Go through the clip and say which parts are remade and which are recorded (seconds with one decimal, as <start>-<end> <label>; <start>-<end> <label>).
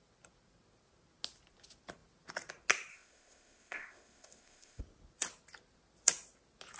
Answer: 0.0-2.9 recorded; 2.9-4.8 remade; 4.8-6.8 recorded